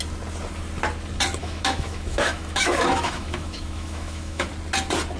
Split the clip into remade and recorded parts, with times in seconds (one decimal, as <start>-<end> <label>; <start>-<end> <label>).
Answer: 0.0-1.4 recorded; 1.4-4.5 remade; 4.5-5.2 recorded